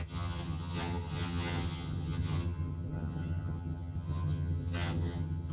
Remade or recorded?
remade